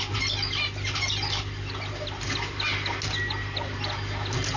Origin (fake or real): real